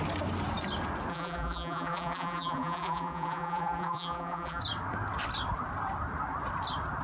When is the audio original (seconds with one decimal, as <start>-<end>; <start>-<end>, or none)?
0.0-1.1; 4.6-7.0